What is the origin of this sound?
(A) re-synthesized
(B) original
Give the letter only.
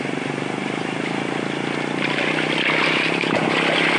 B